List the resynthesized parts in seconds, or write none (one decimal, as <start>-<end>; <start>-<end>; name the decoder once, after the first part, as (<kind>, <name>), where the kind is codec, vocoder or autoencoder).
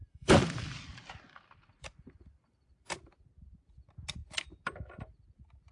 0.0-3.2 (vocoder, BigVGAN v2)